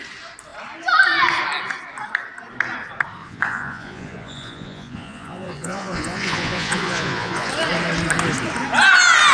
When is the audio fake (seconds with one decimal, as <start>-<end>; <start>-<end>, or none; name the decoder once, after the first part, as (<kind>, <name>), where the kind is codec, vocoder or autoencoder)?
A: 3.2-7.5 (vocoder, Vocos)